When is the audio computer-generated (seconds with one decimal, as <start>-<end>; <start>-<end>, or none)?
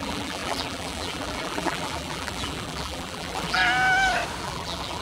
0.0-3.6; 4.4-5.0